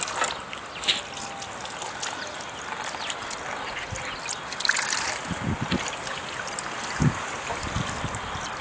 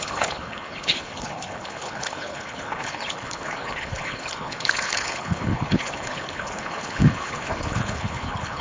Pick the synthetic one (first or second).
second